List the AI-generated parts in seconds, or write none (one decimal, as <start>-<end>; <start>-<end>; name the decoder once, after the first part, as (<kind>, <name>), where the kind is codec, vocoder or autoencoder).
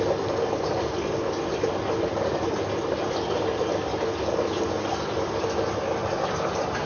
0.0-3.9 (vocoder, BigVGAN v2); 5.0-6.9